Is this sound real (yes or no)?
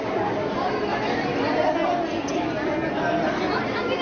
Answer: yes